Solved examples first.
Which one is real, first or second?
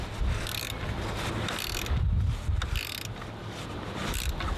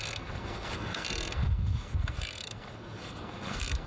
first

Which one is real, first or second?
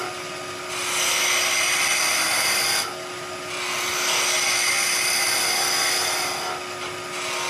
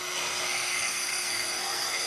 first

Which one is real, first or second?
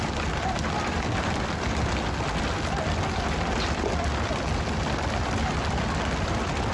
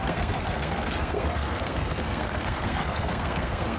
first